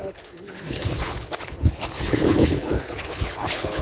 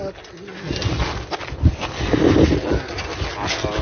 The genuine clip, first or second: second